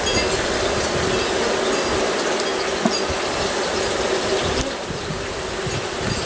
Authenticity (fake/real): real